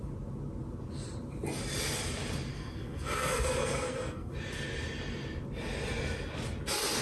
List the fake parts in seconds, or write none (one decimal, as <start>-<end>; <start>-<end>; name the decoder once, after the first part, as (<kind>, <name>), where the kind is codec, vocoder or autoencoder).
2.5-4.3 (codec, SNAC)